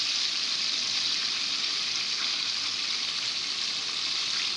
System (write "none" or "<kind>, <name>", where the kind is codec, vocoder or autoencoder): none